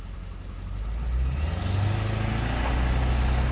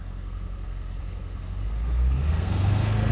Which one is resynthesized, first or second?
second